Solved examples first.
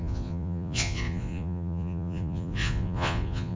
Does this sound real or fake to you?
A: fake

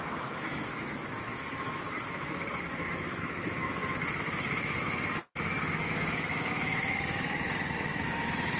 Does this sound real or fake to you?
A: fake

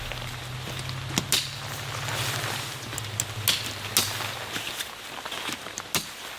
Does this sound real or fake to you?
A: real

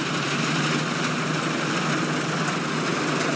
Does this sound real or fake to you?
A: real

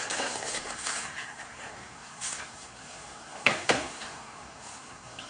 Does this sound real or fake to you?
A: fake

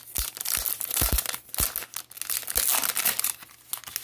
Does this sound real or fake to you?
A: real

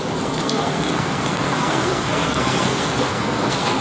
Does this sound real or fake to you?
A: fake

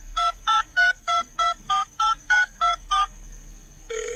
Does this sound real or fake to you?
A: fake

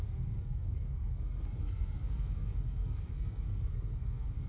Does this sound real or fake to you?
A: fake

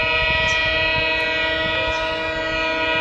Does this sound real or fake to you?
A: real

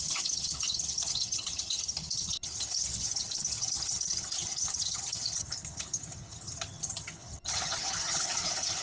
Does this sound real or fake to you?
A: fake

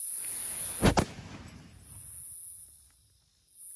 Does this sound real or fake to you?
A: real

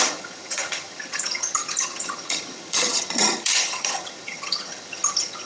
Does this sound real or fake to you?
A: fake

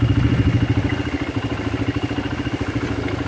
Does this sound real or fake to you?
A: real